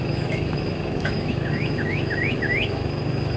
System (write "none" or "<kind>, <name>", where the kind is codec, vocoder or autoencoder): autoencoder, DAC-VAE